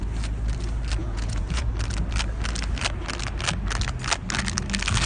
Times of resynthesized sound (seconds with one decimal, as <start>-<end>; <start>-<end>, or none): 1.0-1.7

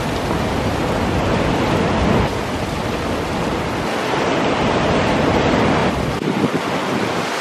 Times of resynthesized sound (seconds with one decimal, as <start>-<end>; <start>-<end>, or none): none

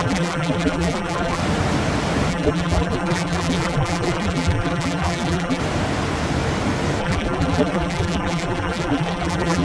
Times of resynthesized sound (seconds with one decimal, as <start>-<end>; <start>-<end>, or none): 0.0-1.4; 2.3-5.6; 7.0-9.6